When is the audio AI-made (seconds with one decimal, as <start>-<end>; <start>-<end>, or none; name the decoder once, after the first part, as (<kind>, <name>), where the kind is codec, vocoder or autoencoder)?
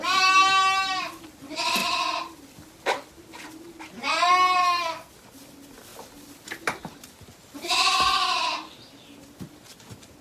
4.6-5.1 (codec, SNAC)